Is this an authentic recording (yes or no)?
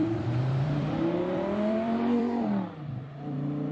no